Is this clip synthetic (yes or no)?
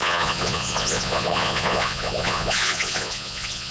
yes